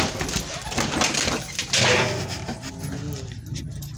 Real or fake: real